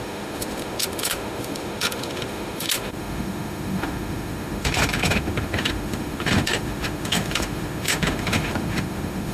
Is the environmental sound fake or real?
fake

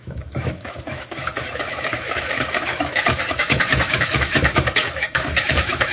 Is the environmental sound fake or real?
fake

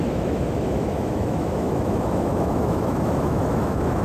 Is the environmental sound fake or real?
fake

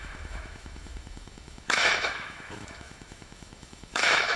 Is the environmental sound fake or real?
fake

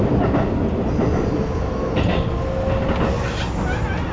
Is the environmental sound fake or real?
real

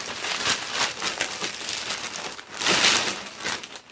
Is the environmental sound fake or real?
real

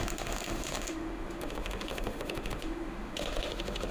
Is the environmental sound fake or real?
fake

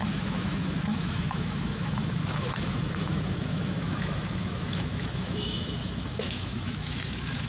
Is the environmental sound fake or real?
fake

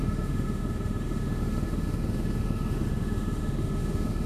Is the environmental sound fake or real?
fake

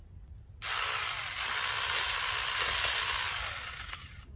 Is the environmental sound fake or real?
real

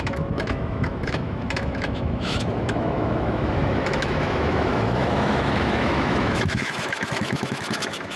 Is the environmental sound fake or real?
fake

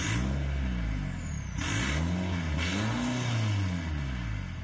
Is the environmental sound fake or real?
real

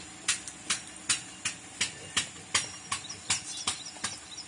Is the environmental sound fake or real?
real